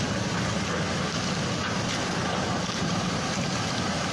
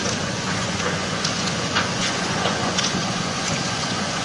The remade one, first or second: second